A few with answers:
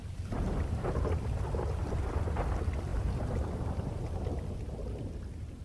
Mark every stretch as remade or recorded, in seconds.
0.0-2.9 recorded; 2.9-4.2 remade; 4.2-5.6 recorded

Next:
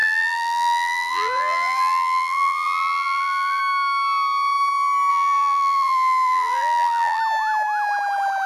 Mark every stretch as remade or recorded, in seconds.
0.0-3.6 remade; 3.6-5.1 recorded; 5.1-7.2 remade; 7.2-8.5 recorded

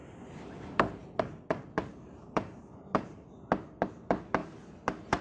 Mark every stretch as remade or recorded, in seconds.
0.0-1.9 recorded; 1.9-3.3 remade; 3.3-5.2 recorded

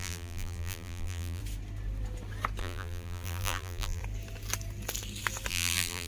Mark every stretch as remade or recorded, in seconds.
0.0-1.4 remade; 1.4-2.6 recorded; 2.6-4.0 remade; 4.0-5.5 recorded; 5.5-6.1 remade

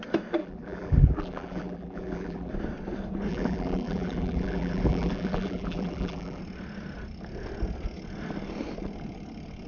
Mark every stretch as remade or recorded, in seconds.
0.0-0.4 recorded; 0.4-2.5 remade; 2.5-3.3 recorded; 3.3-6.4 remade; 6.4-9.7 recorded